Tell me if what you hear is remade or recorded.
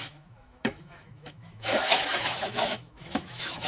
remade